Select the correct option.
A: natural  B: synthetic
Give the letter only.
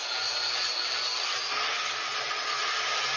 A